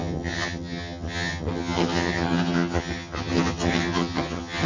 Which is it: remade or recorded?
remade